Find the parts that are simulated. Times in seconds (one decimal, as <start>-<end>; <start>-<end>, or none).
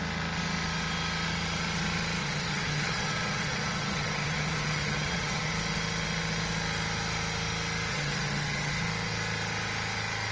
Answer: 2.2-5.5; 7.9-8.8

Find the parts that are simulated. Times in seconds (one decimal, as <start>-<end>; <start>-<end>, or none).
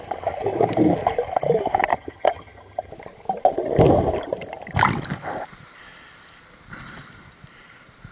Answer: 1.9-2.9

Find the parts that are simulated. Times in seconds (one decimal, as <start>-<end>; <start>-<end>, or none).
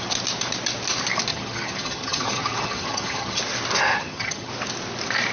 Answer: 1.3-3.4; 3.9-4.5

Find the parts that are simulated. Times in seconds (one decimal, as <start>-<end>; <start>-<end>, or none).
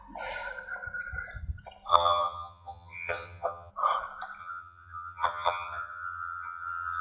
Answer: 1.9-3.7; 4.4-7.0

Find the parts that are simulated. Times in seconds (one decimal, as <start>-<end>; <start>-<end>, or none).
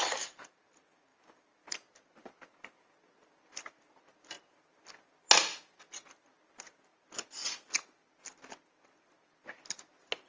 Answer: none